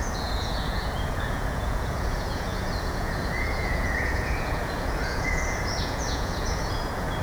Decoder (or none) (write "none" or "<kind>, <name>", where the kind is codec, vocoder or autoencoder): vocoder, Vocos